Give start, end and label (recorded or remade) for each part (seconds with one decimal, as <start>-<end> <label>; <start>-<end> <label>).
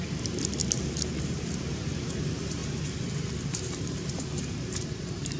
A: 0.0-2.6 remade; 2.6-3.4 recorded; 3.4-5.4 remade